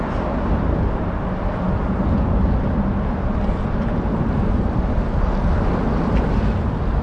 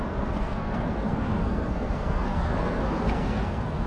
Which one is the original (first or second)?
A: first